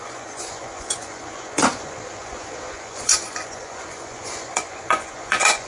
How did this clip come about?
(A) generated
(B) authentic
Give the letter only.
A